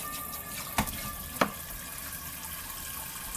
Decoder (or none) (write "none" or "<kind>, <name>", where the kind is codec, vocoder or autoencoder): none